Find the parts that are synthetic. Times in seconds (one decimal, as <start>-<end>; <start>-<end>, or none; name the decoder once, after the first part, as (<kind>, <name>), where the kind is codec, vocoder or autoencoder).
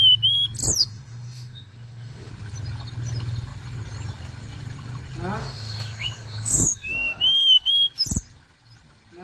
0.8-2.3 (autoencoder, DAC-VAE); 5.4-7.7